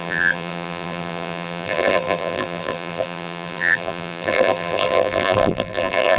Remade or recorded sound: remade